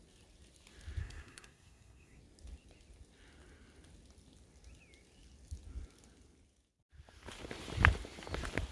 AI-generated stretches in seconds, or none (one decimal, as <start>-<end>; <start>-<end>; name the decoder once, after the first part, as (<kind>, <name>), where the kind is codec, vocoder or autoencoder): 1.0-2.2 (codec, SNAC)